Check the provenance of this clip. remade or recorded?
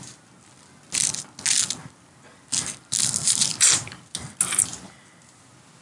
recorded